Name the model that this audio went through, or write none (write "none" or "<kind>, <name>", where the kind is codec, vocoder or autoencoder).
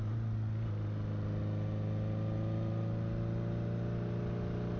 none